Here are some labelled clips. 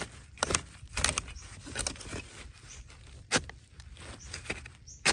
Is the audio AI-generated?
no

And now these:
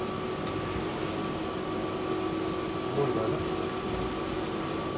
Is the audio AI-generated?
no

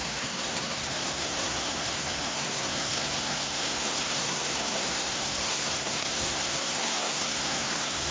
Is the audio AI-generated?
yes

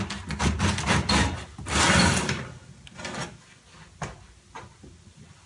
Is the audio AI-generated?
no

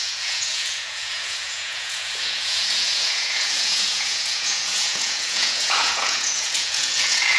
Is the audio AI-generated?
yes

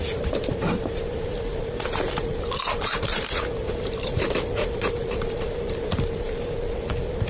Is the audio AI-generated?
yes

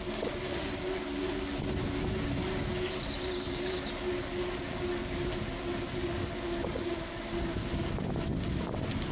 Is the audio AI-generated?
no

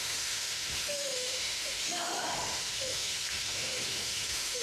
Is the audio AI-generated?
yes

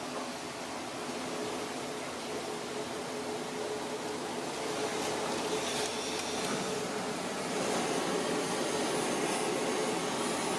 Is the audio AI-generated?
no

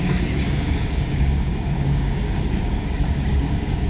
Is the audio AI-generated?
yes